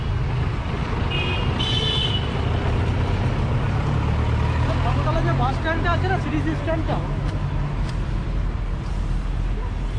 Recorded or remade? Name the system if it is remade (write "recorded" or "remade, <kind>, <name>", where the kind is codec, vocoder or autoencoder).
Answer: recorded